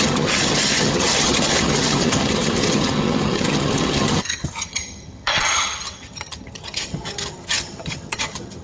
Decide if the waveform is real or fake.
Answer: fake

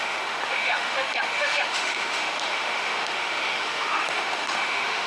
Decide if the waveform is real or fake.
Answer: fake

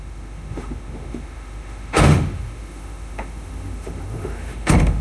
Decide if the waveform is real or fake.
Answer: fake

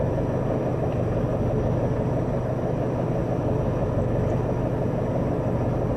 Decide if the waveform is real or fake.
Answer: real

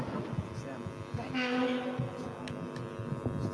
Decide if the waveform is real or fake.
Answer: real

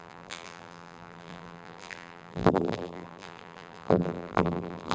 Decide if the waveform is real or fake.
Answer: fake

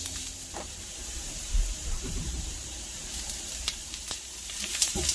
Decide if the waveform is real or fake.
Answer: fake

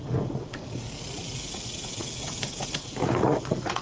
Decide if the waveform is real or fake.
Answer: fake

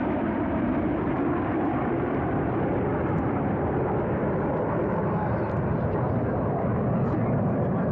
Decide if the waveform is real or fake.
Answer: fake